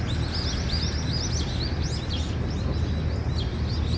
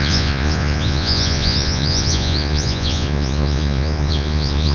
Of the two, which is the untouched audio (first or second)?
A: first